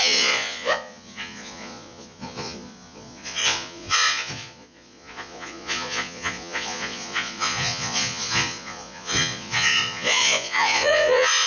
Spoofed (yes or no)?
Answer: yes